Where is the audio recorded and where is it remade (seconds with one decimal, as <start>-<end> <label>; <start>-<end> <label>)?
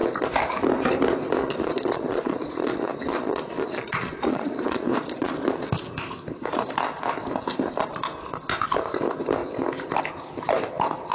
0.0-1.4 recorded; 1.4-5.3 remade; 5.3-11.1 recorded